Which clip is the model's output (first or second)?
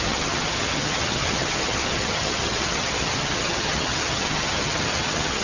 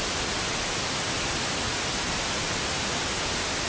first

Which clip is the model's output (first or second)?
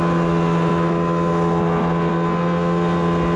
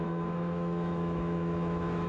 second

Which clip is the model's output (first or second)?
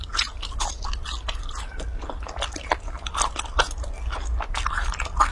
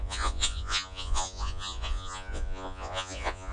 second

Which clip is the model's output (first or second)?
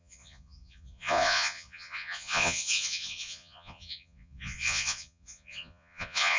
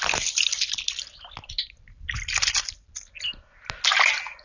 first